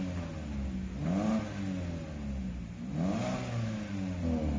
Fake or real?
real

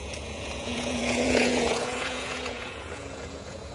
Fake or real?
fake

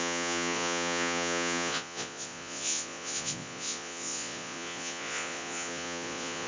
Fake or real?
fake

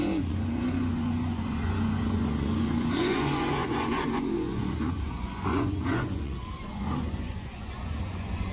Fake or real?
fake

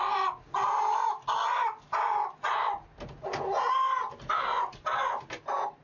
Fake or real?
real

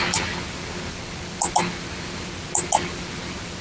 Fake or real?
real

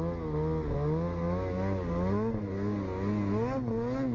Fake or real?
real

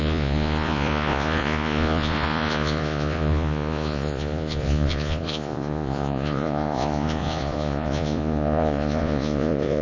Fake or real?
fake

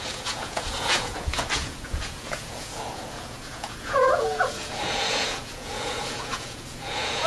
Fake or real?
fake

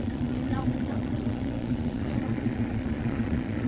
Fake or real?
fake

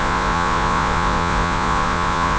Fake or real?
fake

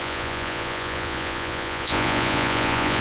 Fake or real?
fake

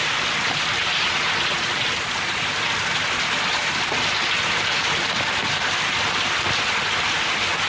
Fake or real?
real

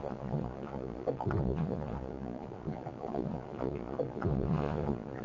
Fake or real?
fake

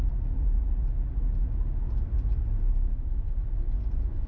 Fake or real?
real